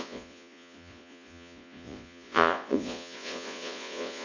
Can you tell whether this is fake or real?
fake